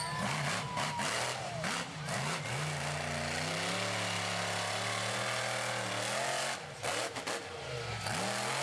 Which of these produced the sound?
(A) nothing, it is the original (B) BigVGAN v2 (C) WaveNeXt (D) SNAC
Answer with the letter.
A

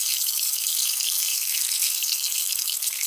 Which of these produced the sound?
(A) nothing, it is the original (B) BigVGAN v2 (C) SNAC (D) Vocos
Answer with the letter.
C